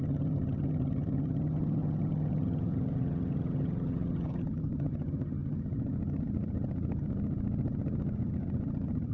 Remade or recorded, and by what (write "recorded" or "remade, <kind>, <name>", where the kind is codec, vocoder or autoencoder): remade, vocoder, HiFi-GAN